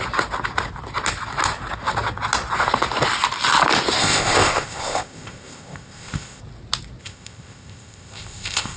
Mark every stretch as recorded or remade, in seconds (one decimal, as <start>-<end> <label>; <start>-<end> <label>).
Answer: 0.0-4.0 recorded; 4.0-6.4 remade; 6.4-7.0 recorded; 7.0-8.8 remade